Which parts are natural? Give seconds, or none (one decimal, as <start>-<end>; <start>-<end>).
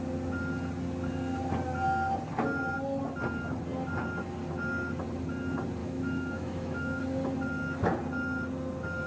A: 0.0-5.8; 7.0-9.1